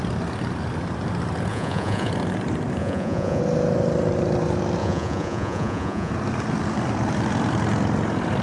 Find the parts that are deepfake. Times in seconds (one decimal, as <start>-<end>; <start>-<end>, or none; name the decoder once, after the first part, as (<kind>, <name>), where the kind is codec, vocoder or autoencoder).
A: 1.5-2.1 (vocoder, Vocos); 2.8-3.4; 4.8-6.1